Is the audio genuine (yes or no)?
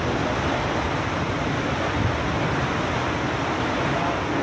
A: yes